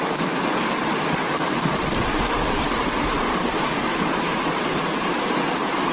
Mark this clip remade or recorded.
remade